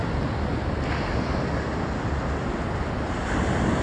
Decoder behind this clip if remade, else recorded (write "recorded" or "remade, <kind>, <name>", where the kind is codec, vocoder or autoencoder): recorded